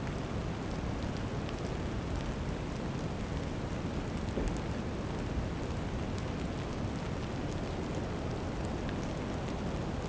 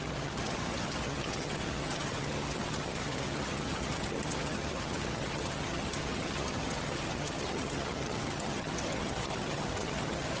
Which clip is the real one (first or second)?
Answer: first